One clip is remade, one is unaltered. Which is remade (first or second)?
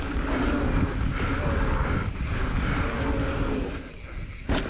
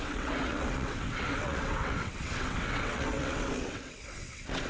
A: second